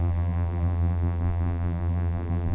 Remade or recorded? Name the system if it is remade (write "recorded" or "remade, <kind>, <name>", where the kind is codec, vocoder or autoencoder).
remade, vocoder, BigVGAN v2